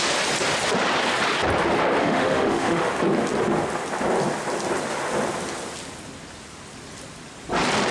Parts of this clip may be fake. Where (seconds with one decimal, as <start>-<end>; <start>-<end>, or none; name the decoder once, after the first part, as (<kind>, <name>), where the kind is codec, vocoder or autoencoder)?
2.0-2.9 (autoencoder, DAC-VAE)